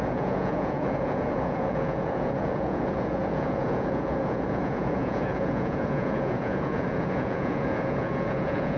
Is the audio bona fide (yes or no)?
no